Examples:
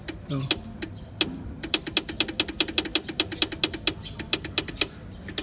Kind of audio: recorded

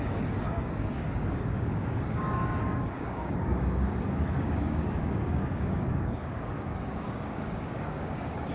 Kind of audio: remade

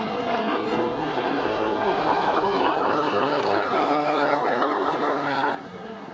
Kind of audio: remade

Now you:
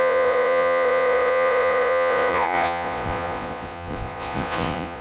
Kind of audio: remade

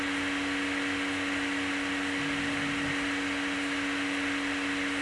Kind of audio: recorded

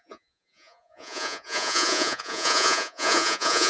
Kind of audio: remade